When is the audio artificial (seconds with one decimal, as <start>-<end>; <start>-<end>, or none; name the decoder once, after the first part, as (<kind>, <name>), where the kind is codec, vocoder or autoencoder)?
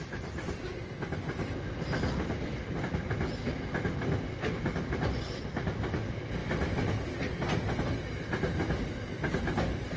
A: none